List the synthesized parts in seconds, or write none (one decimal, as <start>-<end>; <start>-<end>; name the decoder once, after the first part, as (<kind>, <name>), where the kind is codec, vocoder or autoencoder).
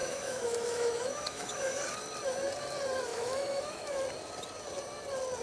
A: 0.0-1.8 (autoencoder, DAC-VAE); 3.1-4.0